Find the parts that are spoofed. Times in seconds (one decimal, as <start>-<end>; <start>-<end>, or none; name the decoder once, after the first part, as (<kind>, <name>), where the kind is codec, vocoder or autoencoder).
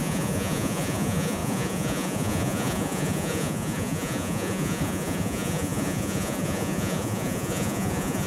0.0-8.3 (vocoder, Vocos)